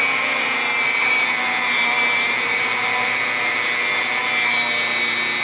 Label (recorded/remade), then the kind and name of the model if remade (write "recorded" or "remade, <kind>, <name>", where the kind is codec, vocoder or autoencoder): remade, vocoder, BigVGAN v2